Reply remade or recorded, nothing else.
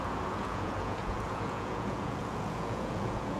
remade